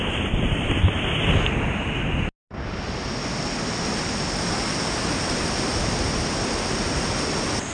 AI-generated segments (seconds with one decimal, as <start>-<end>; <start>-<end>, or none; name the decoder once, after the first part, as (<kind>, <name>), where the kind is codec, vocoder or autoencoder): none